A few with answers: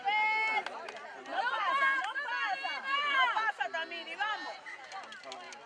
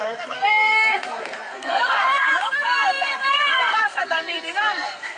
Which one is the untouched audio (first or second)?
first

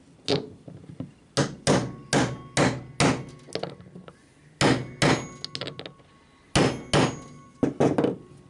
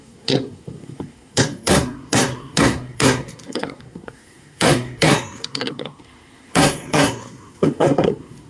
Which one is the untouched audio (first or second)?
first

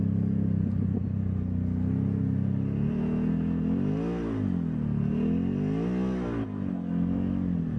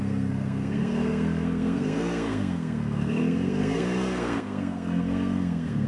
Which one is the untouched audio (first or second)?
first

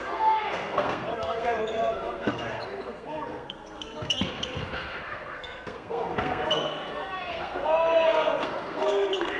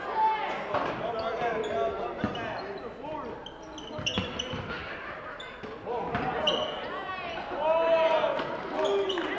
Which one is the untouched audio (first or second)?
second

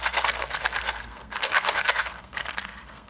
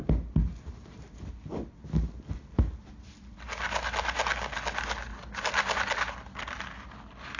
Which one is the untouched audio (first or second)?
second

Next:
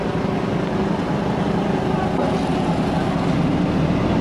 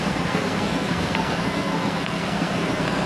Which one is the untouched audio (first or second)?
first